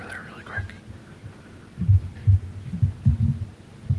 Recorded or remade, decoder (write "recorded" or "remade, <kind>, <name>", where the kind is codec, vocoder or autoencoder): recorded